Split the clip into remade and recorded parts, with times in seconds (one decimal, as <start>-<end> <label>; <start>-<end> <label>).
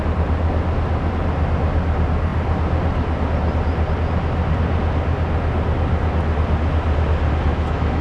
0.0-7.5 recorded; 7.5-8.0 remade